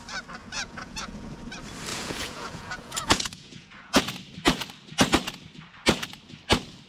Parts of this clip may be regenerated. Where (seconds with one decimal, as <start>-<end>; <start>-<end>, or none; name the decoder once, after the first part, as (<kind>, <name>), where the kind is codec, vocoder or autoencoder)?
0.4-1.3 (vocoder, Vocos); 1.9-4.0